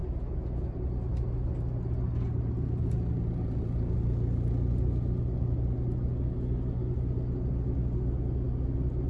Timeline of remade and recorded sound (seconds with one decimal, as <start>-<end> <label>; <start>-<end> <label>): 0.0-9.1 recorded